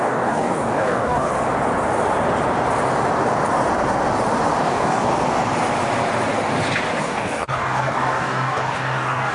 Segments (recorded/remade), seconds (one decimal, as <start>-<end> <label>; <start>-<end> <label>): 0.0-1.3 remade; 1.3-4.6 recorded; 4.6-5.1 remade; 5.1-7.0 recorded; 7.0-9.3 remade